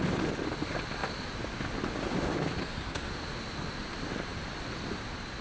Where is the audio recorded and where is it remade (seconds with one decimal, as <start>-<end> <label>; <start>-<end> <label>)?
0.0-2.6 recorded; 2.6-3.1 remade; 3.1-5.4 recorded